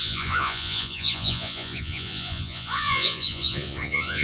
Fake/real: fake